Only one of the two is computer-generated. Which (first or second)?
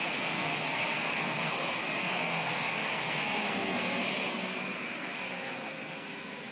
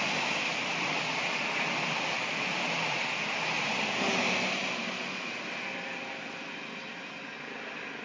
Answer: first